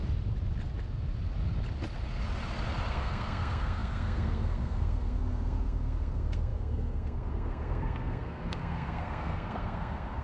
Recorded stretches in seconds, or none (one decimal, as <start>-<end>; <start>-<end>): 0.0-2.9